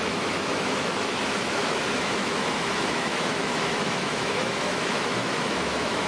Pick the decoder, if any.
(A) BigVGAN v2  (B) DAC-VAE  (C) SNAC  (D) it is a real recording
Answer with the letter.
B